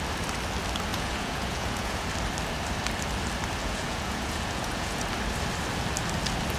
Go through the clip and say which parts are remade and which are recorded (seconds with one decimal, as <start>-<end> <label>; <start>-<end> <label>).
0.0-0.9 recorded; 0.9-2.1 remade; 2.1-3.6 recorded; 3.6-5.0 remade; 5.0-6.6 recorded